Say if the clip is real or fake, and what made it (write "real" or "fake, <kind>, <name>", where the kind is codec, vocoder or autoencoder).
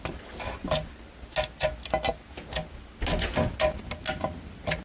real